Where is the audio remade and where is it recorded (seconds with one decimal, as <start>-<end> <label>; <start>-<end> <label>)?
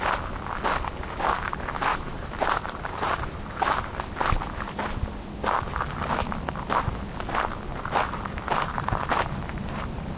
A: 0.0-1.9 recorded; 1.9-4.0 remade; 4.0-7.7 recorded; 7.7-10.2 remade